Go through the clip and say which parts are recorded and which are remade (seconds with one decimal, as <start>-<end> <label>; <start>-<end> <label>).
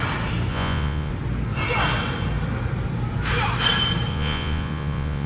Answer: 0.0-0.5 recorded; 0.5-1.1 remade; 1.1-4.1 recorded; 4.1-5.3 remade